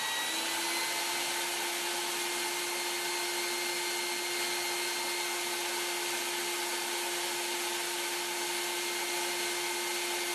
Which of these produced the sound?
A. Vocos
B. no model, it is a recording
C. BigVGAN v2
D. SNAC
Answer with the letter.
B